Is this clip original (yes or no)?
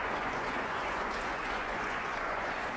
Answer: no